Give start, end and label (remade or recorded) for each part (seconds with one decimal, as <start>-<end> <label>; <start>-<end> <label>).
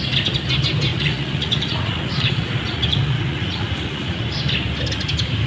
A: 0.0-0.9 recorded; 0.9-4.2 remade; 4.2-5.5 recorded